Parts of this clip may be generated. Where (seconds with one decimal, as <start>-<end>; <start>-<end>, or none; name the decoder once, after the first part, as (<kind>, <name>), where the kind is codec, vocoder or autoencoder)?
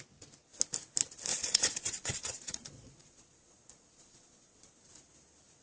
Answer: 1.3-4.7 (vocoder, Vocos)